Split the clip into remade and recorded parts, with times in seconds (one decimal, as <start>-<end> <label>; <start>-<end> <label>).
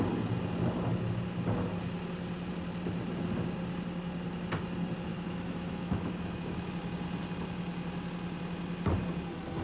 0.0-5.1 recorded; 5.1-6.7 remade; 6.7-9.6 recorded